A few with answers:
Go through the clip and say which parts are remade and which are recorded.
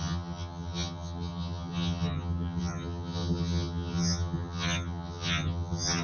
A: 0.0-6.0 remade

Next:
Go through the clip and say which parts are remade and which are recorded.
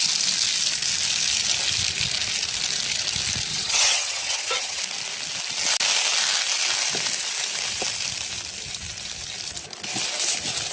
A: 0.0-3.5 recorded; 3.5-4.8 remade; 4.8-10.7 recorded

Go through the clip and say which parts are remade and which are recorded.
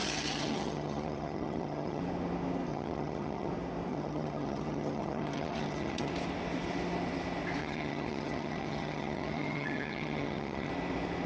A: 0.0-2.0 remade; 2.0-2.7 recorded; 2.7-3.5 remade; 3.5-3.9 recorded; 3.9-6.1 remade; 6.1-7.6 recorded; 7.6-10.7 remade; 10.7-11.3 recorded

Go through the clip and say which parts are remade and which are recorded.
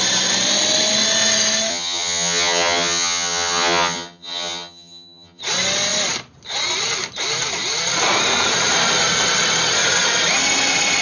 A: 0.0-1.7 recorded; 1.7-5.4 remade; 5.4-11.0 recorded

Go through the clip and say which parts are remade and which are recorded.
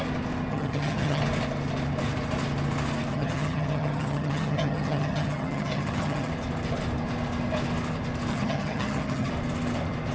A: 0.0-0.5 recorded; 0.5-1.2 remade; 1.2-3.1 recorded; 3.1-6.3 remade; 6.3-8.3 recorded; 8.3-9.3 remade; 9.3-10.1 recorded